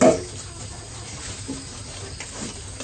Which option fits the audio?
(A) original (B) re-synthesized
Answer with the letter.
A